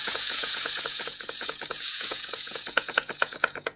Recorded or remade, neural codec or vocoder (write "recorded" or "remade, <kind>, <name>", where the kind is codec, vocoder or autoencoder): remade, vocoder, Vocos